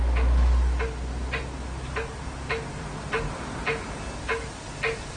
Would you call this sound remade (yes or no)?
no